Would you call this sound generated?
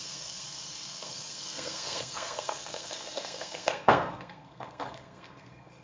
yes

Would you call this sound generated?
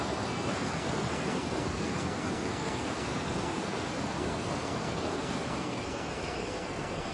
yes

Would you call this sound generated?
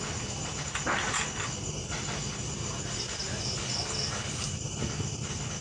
no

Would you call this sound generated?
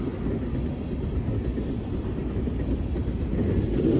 no